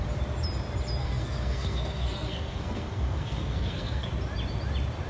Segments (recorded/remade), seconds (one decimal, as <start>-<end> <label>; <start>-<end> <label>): 0.0-1.0 recorded; 1.0-4.1 remade; 4.1-5.1 recorded